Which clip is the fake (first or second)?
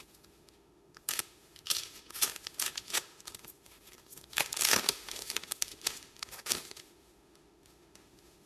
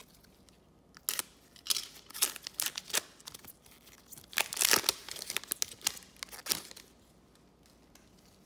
first